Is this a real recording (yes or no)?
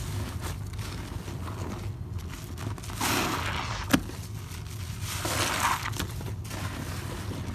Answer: yes